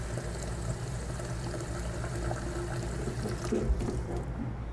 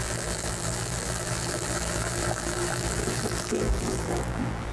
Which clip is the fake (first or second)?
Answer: second